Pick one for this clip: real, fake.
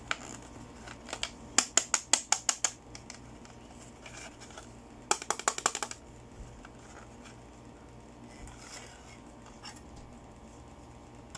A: real